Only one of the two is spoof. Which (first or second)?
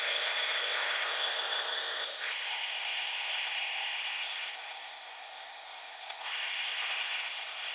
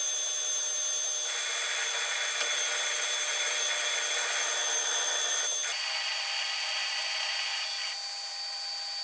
first